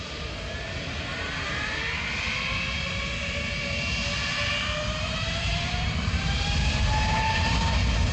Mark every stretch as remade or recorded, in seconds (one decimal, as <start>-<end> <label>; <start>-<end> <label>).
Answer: 0.0-1.1 recorded; 1.1-1.8 remade; 1.8-3.6 recorded; 3.6-7.6 remade; 7.6-8.1 recorded